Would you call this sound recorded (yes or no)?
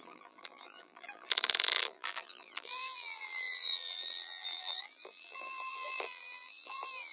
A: no